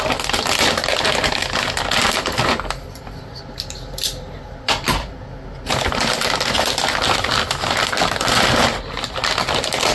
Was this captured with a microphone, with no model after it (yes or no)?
yes